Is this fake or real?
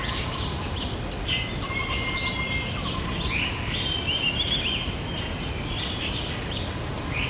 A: real